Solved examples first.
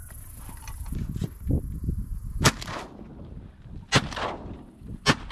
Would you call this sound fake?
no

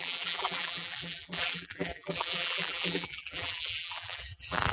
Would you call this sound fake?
yes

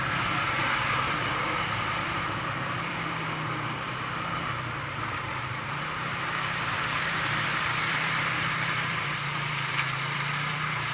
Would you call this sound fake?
yes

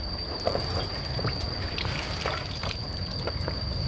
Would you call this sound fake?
yes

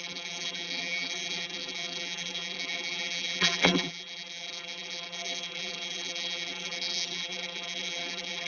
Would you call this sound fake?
yes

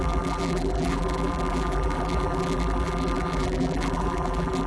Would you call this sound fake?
yes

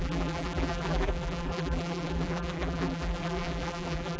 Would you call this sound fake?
yes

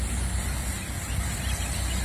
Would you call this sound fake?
no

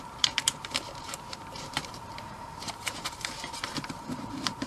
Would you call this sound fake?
yes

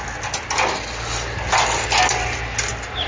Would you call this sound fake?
no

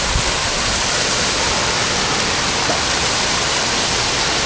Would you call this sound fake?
no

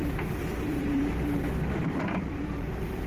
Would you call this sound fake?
yes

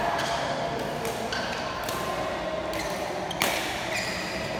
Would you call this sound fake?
no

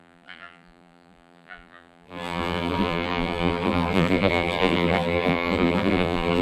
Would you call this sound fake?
yes